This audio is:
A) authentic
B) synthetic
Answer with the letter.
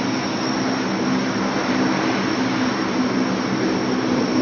A